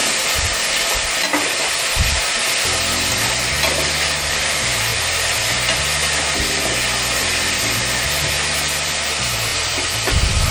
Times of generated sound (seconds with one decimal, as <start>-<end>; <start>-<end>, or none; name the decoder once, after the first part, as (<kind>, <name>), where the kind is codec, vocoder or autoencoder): 4.3-4.9 (vocoder, BigVGAN v2); 7.5-10.5